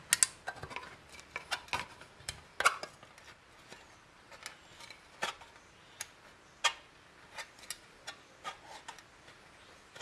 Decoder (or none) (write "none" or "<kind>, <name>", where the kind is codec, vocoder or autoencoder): none